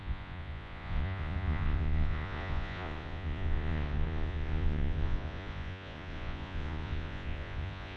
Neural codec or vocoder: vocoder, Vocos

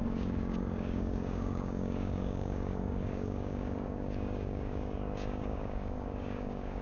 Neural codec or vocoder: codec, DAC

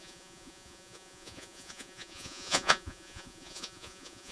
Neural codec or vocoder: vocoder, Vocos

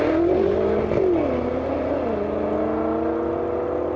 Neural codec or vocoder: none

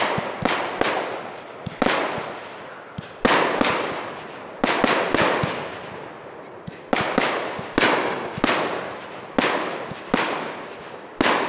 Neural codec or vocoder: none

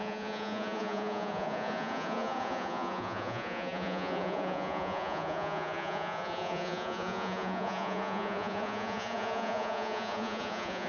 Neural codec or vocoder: vocoder, Vocos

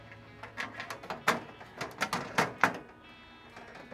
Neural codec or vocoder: none